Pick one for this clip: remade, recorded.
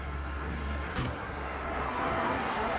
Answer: remade